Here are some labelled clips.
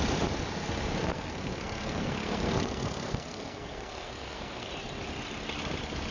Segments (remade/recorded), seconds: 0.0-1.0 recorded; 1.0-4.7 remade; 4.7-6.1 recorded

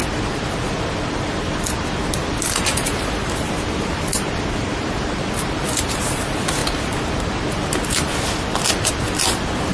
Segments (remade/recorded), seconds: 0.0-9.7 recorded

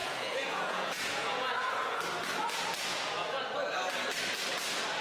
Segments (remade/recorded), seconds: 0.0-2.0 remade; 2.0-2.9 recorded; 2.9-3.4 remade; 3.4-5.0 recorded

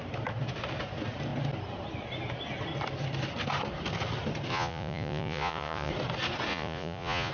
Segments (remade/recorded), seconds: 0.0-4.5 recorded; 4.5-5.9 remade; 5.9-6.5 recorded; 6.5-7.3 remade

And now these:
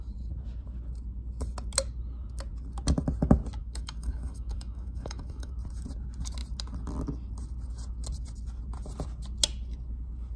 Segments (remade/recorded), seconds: 0.0-3.6 recorded; 3.6-5.5 remade; 5.5-10.4 recorded

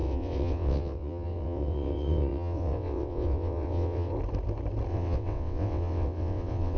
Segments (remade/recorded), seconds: 0.0-4.1 remade; 4.1-4.9 recorded; 4.9-6.8 remade